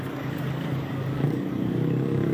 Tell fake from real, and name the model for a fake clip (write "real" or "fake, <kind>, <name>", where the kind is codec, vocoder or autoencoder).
fake, codec, DAC